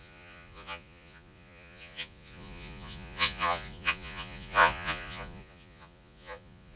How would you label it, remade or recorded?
remade